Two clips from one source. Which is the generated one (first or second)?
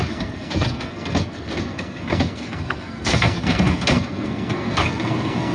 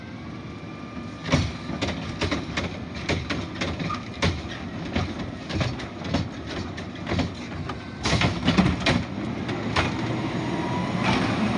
first